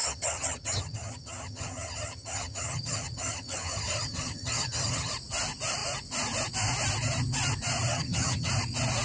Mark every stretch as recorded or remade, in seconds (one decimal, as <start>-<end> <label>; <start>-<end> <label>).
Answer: 0.0-5.1 remade; 5.1-7.9 recorded; 7.9-8.5 remade; 8.5-9.0 recorded